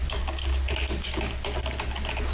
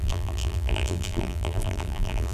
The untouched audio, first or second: first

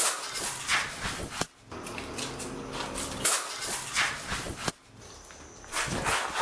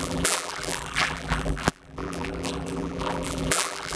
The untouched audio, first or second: first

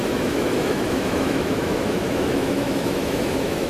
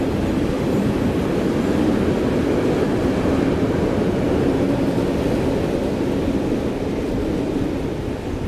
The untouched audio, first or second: second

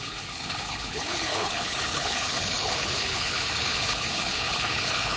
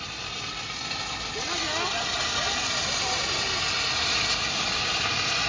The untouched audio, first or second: second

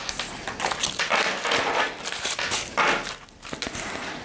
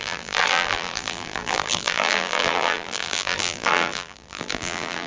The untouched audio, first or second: first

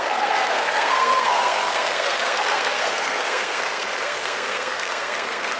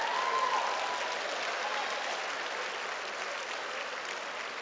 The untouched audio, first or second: second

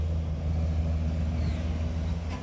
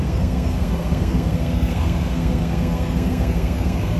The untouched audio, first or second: first